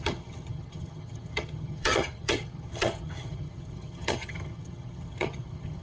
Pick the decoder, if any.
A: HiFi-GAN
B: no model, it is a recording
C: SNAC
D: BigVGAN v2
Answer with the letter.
A